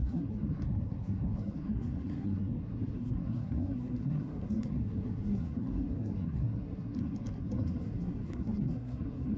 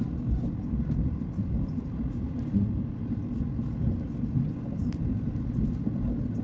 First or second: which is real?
second